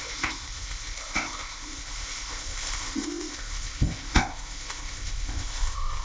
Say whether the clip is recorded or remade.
remade